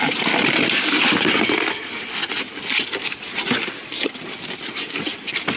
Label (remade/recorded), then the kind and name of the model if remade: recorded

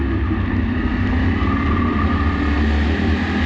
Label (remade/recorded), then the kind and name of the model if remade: recorded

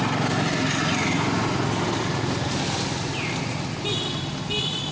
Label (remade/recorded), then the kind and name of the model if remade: recorded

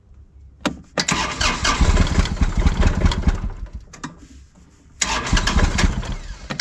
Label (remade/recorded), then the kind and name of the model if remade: recorded